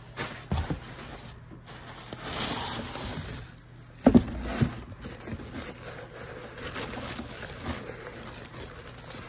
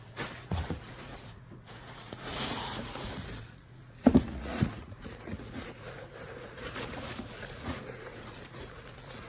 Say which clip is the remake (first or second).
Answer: second